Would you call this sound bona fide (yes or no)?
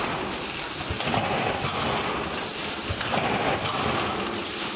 yes